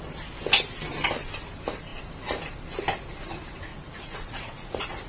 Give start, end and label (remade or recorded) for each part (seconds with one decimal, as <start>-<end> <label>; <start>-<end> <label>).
0.0-3.7 recorded; 3.7-5.1 remade